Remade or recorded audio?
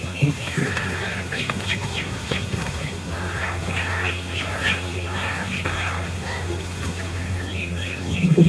remade